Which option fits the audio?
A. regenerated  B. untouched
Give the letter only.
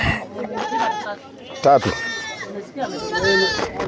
B